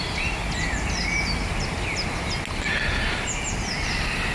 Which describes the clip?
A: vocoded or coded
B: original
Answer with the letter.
B